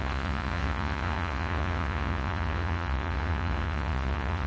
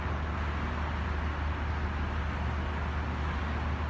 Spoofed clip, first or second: first